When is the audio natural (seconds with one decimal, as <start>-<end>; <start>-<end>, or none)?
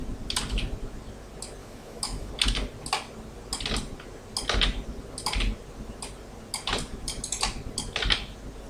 0.0-1.6; 2.3-8.7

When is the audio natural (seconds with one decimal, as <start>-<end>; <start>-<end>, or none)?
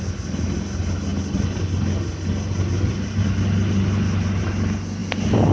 0.0-5.5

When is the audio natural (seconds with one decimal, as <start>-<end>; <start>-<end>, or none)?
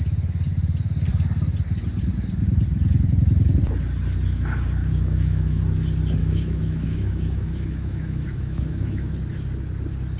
0.0-4.8; 5.6-6.2; 9.1-10.2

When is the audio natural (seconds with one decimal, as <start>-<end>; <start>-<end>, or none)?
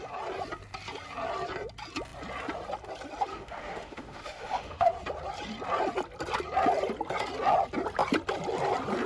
0.0-3.3; 4.9-9.1